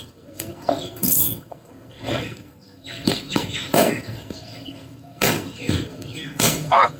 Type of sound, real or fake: fake